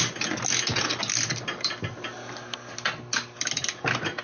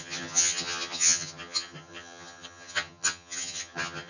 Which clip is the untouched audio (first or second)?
first